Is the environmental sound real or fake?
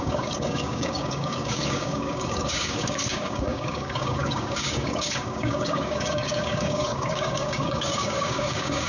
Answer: fake